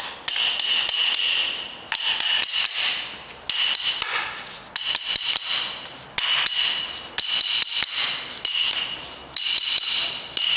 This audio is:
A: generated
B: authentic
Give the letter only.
B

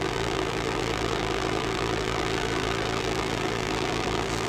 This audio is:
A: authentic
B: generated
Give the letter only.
B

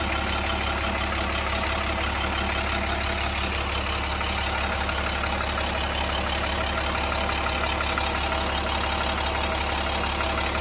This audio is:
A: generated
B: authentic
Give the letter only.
B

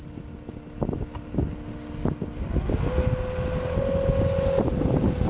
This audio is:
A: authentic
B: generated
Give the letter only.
A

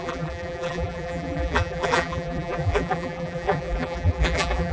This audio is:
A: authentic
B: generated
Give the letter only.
B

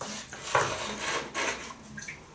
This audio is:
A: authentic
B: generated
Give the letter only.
A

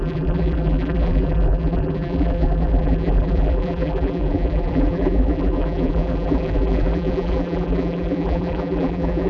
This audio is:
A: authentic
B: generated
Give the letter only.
B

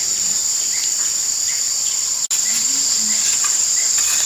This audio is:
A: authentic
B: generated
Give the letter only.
A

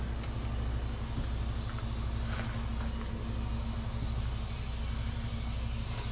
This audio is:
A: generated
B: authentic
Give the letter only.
B